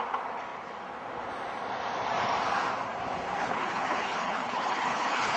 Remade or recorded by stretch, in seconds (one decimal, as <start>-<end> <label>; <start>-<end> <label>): 0.0-3.4 recorded; 3.4-5.4 remade

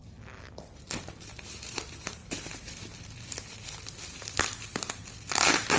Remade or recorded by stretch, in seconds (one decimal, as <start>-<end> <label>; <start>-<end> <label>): 0.0-1.5 recorded; 1.5-2.2 remade; 2.2-5.8 recorded

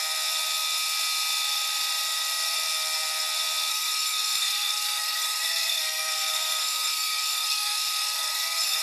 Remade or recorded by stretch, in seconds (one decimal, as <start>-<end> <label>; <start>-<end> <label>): 0.0-3.7 recorded; 3.7-8.8 remade

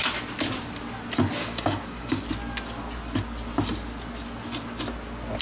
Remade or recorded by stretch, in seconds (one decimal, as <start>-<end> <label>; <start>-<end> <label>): 0.0-1.4 recorded; 1.4-2.2 remade; 2.2-5.4 recorded

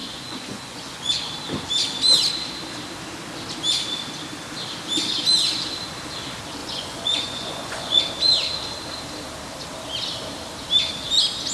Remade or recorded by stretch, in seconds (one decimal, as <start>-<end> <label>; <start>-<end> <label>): 0.0-1.3 remade; 1.3-6.6 recorded; 6.6-8.0 remade; 8.0-11.5 recorded

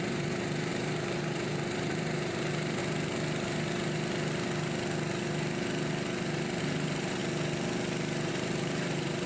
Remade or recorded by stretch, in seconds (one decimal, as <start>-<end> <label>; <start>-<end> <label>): 0.0-2.8 remade; 2.8-6.6 recorded; 6.6-7.2 remade; 7.2-8.3 recorded; 8.3-9.3 remade